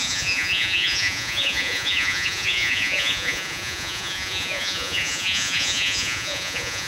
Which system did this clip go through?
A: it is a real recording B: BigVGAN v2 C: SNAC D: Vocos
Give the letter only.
D